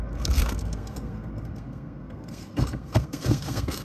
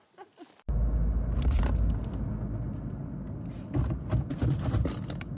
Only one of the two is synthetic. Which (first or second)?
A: first